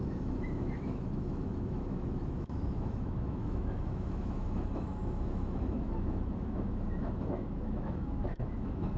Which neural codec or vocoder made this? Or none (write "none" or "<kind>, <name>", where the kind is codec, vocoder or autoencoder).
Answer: autoencoder, DAC-VAE